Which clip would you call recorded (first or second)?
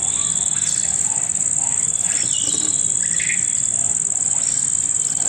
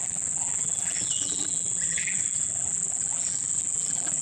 first